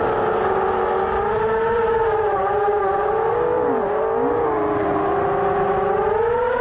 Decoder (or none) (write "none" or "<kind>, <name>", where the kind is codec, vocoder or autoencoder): none